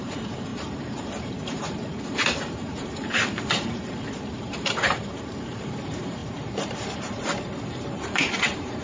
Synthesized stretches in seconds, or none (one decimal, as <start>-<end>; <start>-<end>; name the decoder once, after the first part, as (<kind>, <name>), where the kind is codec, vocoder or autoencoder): 0.0-8.8 (vocoder, BigVGAN v2)